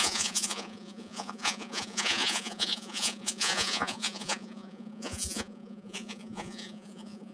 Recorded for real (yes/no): no